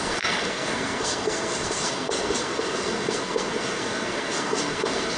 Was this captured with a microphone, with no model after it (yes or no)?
no